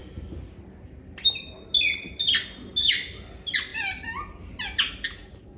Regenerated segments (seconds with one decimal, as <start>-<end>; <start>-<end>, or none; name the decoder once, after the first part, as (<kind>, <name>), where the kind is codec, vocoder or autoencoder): none